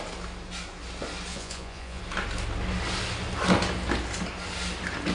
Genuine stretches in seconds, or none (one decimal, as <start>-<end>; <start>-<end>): 0.0-1.3; 2.0-5.1